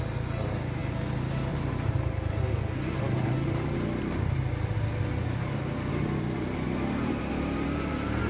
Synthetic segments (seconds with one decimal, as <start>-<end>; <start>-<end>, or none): 0.8-1.7